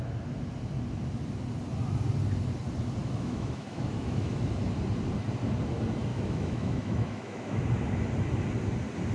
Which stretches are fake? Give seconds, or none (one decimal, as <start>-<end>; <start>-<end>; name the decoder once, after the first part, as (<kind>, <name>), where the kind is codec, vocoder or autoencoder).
3.0-4.4 (autoencoder, DAC-VAE); 6.1-7.6